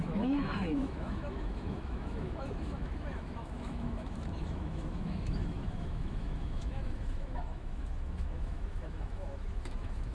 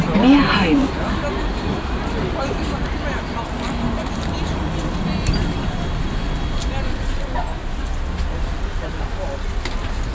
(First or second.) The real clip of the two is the second